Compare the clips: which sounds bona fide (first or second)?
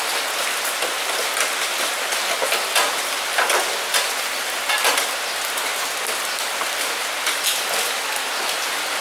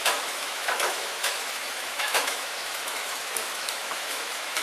first